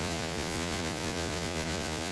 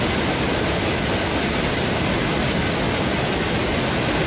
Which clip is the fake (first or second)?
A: first